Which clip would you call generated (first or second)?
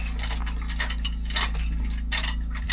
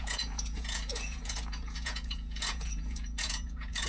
second